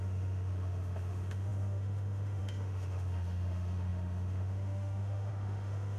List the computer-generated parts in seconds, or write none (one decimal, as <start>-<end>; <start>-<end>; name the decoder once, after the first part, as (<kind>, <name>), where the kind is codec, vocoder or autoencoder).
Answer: 0.0-6.0 (autoencoder, DAC-VAE)